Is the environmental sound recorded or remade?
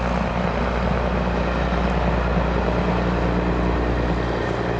recorded